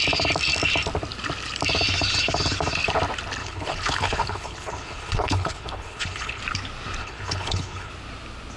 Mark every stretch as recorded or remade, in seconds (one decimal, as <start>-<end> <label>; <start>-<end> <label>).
0.0-3.4 recorded; 3.4-6.4 remade; 6.4-7.0 recorded; 7.0-7.9 remade; 7.9-8.6 recorded